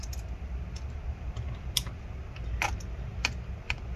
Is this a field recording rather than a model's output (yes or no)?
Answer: yes